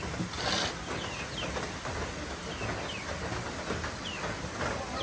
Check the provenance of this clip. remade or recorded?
recorded